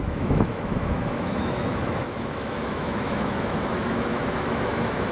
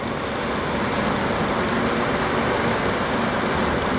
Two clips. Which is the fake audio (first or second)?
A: first